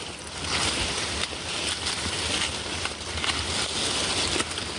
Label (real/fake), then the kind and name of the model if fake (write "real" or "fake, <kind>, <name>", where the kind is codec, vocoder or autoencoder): real